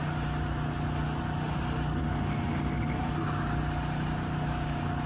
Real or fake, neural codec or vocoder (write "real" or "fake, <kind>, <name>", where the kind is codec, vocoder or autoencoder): real